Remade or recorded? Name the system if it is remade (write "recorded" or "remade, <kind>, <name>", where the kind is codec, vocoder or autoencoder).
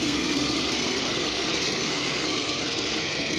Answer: remade, codec, SNAC